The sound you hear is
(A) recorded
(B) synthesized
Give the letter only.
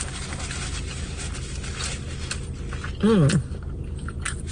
A